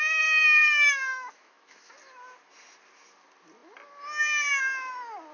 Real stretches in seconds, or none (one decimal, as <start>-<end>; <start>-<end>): 0.0-0.6; 1.9-5.3